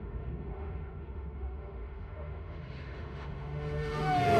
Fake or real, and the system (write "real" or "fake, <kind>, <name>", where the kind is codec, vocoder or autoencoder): fake, autoencoder, DAC-VAE